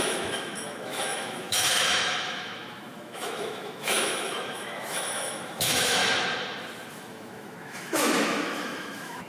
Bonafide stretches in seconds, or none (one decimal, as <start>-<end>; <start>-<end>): 6.0-6.9